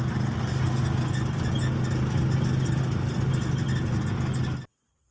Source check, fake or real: real